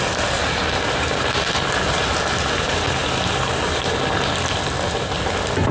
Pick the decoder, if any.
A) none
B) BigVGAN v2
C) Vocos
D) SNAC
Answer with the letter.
A